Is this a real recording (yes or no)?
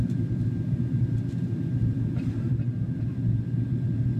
yes